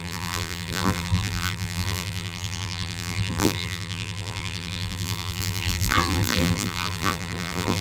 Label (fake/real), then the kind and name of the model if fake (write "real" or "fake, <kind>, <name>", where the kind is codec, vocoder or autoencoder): fake, vocoder, BigVGAN v2